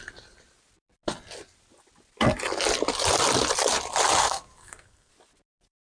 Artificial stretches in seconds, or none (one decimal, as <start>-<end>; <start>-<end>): 4.2-5.1